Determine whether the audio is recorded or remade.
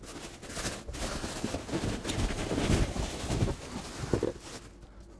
recorded